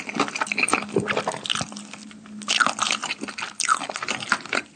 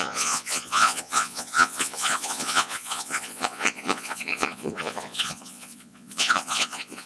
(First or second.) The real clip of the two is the first